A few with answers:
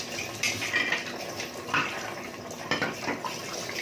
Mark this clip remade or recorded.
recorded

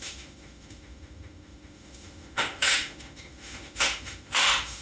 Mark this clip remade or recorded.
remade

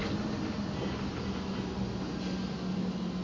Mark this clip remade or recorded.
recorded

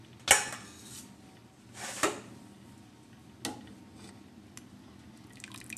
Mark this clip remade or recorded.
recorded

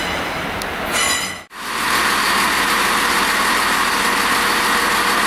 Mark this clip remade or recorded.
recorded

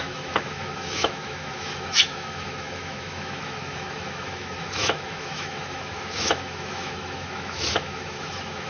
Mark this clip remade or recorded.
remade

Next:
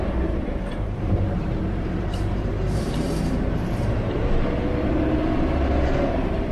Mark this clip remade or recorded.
remade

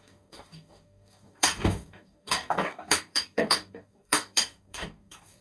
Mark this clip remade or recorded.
remade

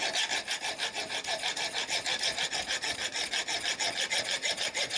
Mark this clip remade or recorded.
recorded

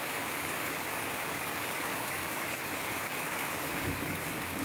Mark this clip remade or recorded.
remade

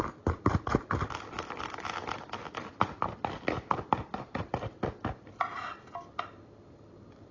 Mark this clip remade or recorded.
recorded